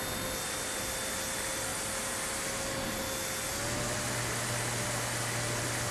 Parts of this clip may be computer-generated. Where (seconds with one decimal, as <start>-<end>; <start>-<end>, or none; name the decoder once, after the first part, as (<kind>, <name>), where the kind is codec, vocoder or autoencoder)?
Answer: 1.7-2.2 (vocoder, BigVGAN v2)